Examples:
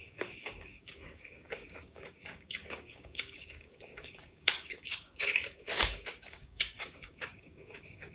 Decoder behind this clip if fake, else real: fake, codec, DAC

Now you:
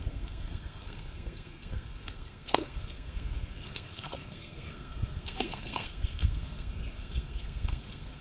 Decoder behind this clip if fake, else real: fake, codec, SNAC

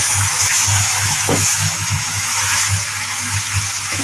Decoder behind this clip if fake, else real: fake, autoencoder, DAC-VAE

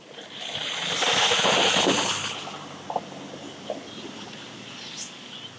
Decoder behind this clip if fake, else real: real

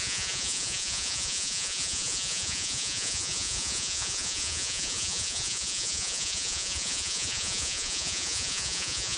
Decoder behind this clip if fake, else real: fake, vocoder, Vocos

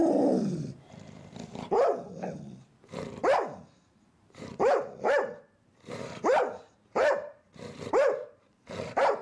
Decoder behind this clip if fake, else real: fake, vocoder, BigVGAN v2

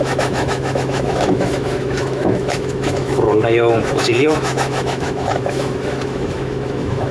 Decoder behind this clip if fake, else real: fake, autoencoder, DAC-VAE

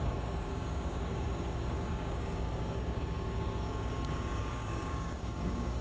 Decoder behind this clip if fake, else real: fake, codec, DAC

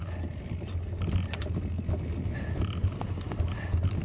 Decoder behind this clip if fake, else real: real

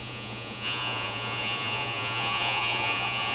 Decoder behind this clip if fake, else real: fake, vocoder, Vocos